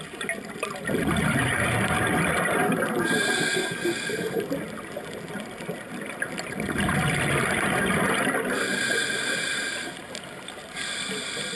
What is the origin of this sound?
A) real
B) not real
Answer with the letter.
A